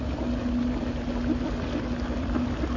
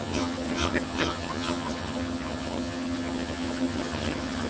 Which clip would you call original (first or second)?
first